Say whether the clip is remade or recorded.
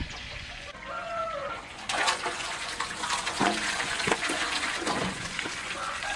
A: remade